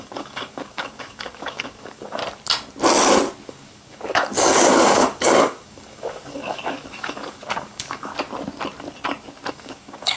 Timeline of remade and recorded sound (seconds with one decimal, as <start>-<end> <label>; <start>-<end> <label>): 0.0-2.2 remade; 2.2-3.5 recorded; 3.5-8.1 remade; 8.1-9.5 recorded; 9.5-10.2 remade